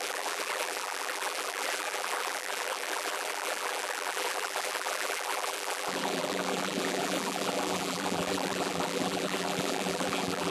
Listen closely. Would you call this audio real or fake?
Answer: fake